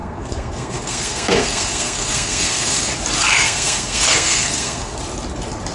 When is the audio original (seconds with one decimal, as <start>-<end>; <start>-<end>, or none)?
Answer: 2.9-3.3; 5.0-5.7